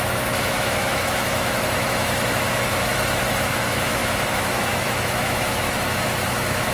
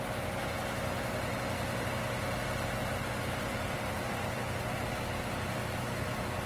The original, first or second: second